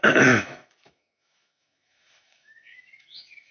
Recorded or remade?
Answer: remade